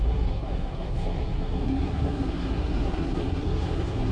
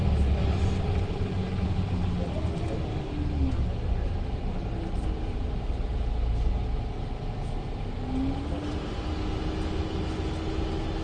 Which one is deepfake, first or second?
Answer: first